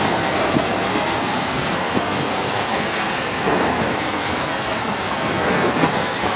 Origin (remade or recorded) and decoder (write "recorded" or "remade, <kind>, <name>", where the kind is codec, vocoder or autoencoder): remade, codec, SNAC